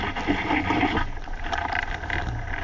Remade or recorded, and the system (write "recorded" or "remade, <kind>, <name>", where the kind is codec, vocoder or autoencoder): recorded